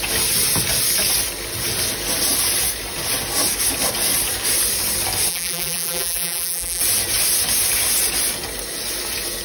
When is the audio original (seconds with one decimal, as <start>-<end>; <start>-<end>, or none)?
0.0-5.3; 6.8-9.4